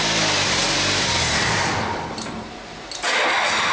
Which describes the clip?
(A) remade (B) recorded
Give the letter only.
B